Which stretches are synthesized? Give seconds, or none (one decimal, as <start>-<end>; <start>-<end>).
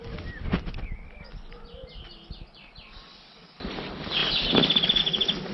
none